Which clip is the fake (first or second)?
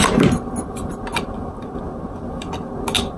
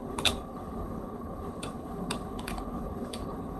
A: second